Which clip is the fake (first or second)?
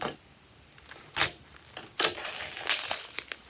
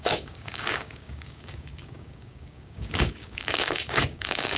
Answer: second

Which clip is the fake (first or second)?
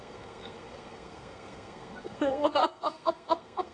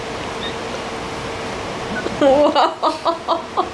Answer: first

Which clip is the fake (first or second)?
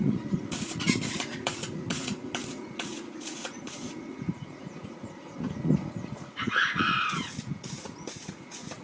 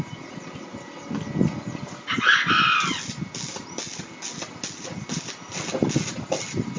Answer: first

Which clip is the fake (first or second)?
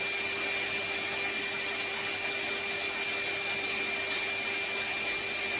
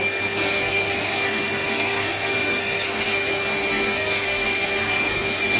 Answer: second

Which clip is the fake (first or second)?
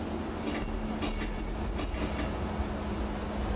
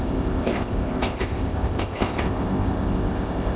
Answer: second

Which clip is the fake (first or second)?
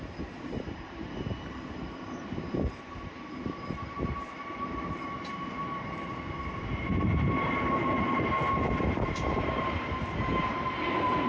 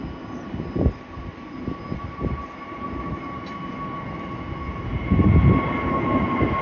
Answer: first